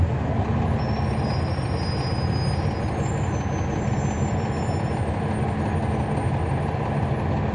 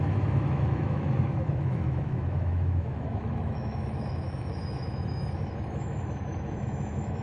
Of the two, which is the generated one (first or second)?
second